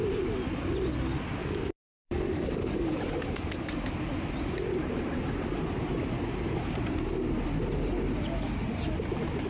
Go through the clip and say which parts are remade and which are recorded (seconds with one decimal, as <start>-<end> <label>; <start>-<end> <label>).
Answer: 0.0-1.4 recorded; 1.4-3.9 remade; 3.9-9.5 recorded